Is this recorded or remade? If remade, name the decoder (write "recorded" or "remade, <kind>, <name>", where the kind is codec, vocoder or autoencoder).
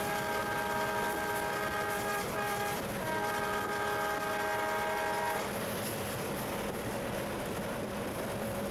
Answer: recorded